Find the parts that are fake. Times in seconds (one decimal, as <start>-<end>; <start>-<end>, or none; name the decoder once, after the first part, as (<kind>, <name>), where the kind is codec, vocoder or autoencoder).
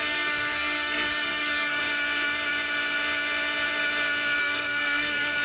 0.0-1.8 (codec, SNAC); 4.4-5.4